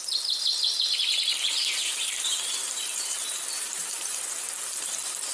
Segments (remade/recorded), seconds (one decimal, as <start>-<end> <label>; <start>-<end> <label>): 0.0-1.1 recorded; 1.1-4.2 remade; 4.2-5.3 recorded